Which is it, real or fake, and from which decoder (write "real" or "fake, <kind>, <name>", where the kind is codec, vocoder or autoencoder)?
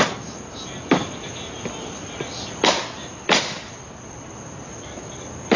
fake, vocoder, BigVGAN v2